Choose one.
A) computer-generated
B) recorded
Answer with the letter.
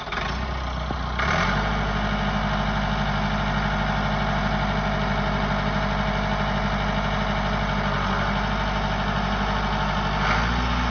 B